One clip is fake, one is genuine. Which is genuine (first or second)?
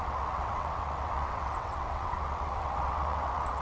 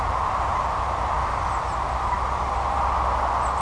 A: second